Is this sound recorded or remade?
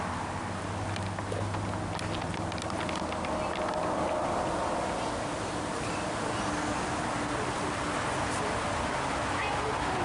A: recorded